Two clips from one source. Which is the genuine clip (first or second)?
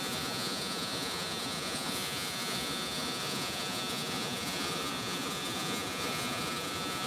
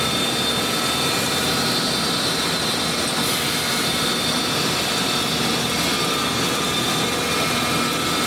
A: second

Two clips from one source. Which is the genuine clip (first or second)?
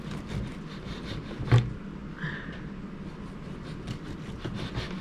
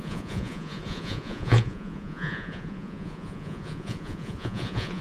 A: first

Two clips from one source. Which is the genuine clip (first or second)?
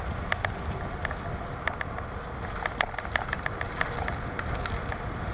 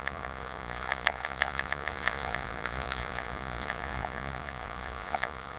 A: first